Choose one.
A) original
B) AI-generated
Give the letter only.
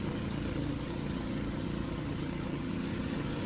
B